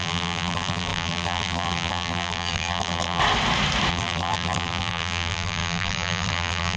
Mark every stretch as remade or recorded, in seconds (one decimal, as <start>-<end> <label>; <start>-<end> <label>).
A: 0.0-3.2 remade; 3.2-3.9 recorded; 3.9-6.8 remade